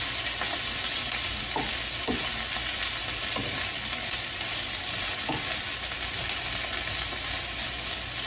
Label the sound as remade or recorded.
recorded